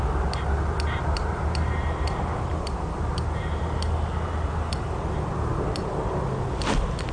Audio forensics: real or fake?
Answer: real